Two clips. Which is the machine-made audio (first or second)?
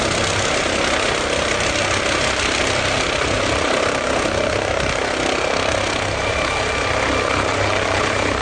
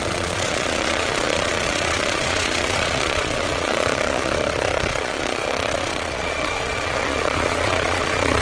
second